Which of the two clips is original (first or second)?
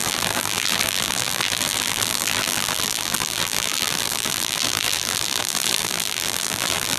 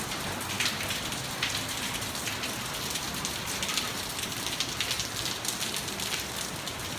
second